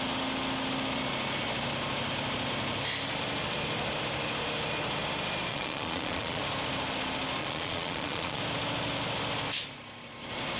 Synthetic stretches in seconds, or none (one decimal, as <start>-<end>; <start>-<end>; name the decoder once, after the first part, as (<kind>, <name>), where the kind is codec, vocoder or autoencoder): 5.5-6.4 (vocoder, Vocos); 7.4-8.4